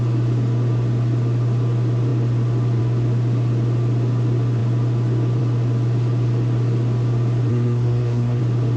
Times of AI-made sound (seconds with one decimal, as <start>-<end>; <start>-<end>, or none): 7.5-8.4